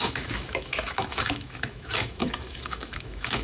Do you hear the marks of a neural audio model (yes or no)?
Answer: yes